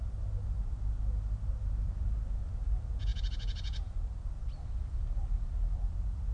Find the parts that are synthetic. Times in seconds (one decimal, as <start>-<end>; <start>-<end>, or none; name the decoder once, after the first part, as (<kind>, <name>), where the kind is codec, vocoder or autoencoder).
3.1-4.6 (vocoder, BigVGAN v2)